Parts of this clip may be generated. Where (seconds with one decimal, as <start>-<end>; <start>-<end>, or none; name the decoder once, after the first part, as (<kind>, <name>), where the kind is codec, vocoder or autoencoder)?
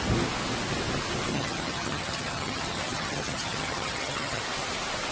1.3-4.4 (vocoder, HiFi-GAN)